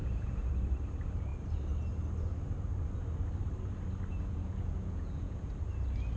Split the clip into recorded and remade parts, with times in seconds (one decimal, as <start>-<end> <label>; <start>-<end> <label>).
0.0-0.5 remade; 0.5-4.1 recorded; 4.1-5.5 remade; 5.5-6.2 recorded